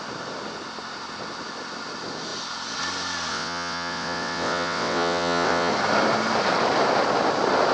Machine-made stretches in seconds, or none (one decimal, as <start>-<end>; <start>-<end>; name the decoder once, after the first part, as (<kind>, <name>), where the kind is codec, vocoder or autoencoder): 3.3-5.7 (vocoder, WaveNeXt)